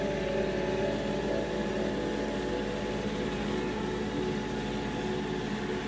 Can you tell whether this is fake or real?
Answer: real